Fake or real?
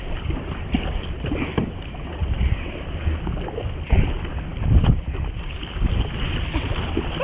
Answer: real